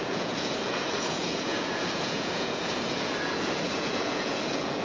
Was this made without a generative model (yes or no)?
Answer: no